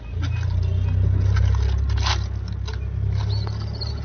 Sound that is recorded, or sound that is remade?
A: recorded